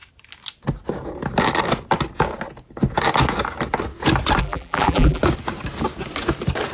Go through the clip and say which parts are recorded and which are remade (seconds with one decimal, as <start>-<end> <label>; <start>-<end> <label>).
0.0-4.4 recorded; 4.4-5.2 remade; 5.2-6.7 recorded